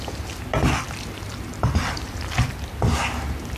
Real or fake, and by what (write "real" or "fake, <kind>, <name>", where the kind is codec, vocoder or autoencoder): real